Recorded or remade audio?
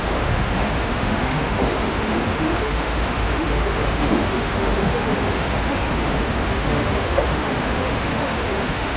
remade